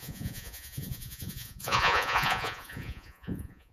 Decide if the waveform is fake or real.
fake